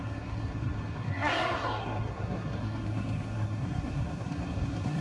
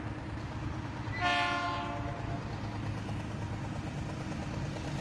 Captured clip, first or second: second